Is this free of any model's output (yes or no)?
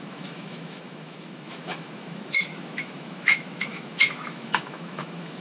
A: no